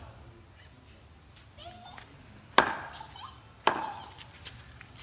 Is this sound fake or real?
real